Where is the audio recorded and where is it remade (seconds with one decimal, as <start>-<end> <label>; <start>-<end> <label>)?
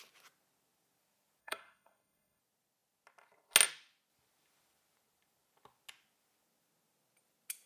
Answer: 0.0-1.4 recorded; 1.4-2.4 remade; 2.4-7.7 recorded